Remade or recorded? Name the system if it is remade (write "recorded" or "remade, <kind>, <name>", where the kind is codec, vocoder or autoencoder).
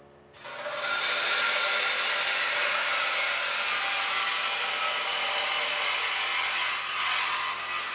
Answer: recorded